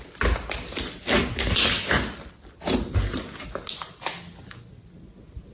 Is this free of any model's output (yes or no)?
yes